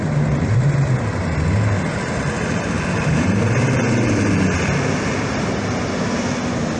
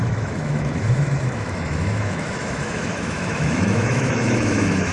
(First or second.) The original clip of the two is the first